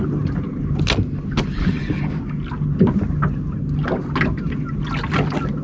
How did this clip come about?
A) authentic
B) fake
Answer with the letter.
A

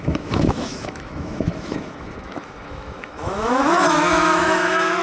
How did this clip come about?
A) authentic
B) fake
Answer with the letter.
B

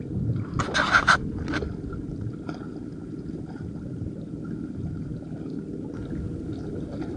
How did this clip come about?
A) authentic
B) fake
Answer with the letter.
A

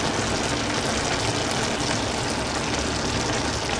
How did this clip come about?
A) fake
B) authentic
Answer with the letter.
B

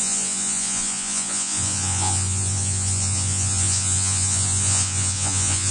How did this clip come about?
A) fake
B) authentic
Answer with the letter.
A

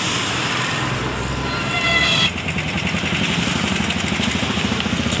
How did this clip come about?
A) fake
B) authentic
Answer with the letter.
B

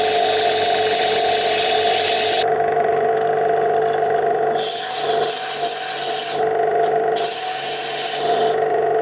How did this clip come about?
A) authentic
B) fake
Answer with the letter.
A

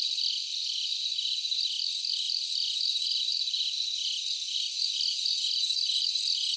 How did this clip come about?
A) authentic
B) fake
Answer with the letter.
A